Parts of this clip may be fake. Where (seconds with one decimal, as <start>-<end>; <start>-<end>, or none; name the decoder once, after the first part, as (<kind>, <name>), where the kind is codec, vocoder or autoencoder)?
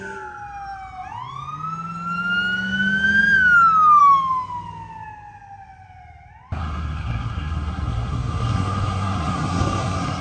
6.6-10.2 (codec, SNAC)